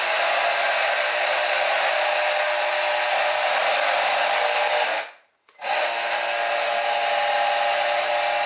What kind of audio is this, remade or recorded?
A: recorded